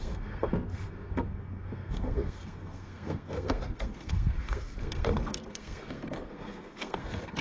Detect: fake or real fake